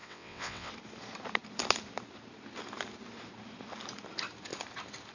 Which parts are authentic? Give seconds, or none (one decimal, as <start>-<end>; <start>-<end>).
0.7-5.1